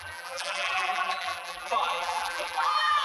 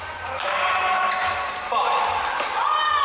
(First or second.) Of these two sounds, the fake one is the first